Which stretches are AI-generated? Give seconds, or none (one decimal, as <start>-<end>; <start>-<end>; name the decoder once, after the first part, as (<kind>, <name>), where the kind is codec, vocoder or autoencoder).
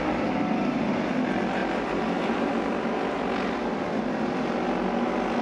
1.6-2.5 (vocoder, BigVGAN v2)